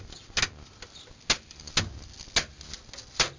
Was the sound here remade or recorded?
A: recorded